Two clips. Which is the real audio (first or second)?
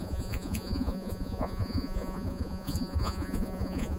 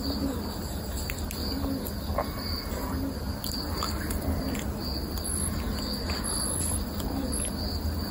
second